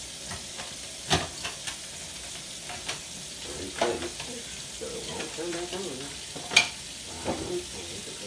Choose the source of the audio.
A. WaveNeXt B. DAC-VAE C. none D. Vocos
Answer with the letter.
C